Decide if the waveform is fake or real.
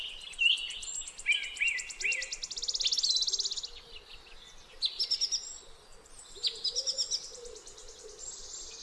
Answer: real